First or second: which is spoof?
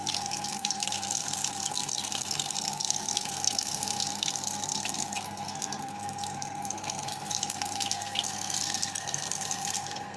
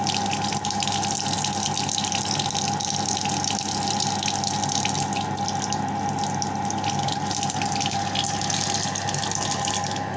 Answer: first